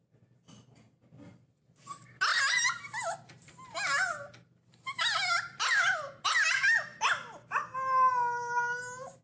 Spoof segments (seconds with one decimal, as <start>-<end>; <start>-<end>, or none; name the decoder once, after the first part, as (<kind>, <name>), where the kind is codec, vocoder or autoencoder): none